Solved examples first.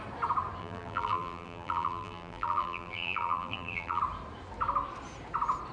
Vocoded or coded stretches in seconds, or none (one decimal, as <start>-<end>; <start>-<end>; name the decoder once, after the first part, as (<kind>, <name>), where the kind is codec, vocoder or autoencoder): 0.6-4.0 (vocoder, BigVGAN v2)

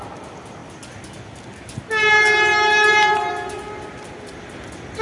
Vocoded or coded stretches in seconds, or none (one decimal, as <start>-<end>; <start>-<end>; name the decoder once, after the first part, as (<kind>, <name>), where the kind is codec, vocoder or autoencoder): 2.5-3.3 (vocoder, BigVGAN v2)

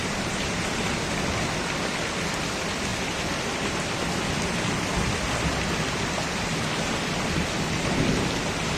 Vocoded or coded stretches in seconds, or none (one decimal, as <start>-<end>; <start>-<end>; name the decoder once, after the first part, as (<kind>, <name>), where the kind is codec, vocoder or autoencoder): 0.0-0.8 (vocoder, BigVGAN v2)

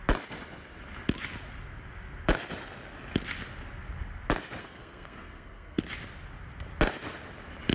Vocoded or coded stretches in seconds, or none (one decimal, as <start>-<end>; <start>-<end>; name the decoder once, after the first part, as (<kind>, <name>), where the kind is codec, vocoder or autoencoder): 4.6-5.8 (codec, SNAC)

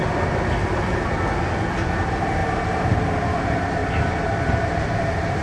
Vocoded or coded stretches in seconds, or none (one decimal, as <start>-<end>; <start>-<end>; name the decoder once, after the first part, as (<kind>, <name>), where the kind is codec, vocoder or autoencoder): 2.4-3.1 (vocoder, BigVGAN v2); 3.8-4.8

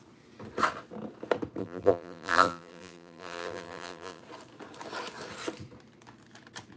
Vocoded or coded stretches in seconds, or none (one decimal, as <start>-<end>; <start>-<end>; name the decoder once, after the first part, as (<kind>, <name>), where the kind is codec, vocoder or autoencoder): 1.6-4.2 (vocoder, BigVGAN v2)

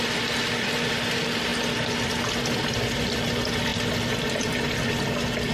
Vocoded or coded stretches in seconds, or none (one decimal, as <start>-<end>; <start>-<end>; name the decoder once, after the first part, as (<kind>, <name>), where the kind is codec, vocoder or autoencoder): 3.7-4.8 (vocoder, BigVGAN v2)